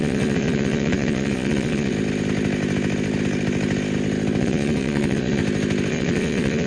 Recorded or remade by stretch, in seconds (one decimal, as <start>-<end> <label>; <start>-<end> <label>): 0.0-1.9 remade; 1.9-4.4 recorded; 4.4-5.4 remade; 5.4-5.9 recorded; 5.9-6.7 remade